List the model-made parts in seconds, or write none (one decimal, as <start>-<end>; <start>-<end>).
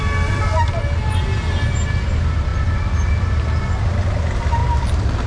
none